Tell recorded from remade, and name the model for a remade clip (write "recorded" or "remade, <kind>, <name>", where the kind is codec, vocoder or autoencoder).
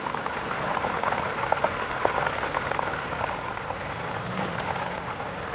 recorded